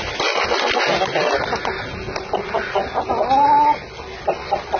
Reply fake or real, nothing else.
real